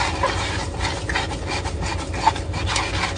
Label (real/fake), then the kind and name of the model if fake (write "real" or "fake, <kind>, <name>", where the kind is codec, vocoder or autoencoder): real